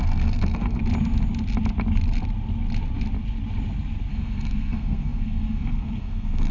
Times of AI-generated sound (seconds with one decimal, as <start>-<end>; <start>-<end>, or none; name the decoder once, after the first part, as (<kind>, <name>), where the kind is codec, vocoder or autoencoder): 0.0-0.8 (codec, SNAC); 4.1-6.5